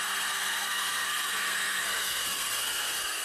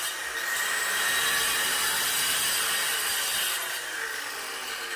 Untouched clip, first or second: second